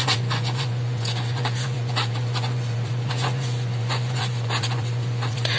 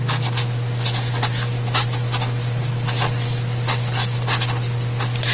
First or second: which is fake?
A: first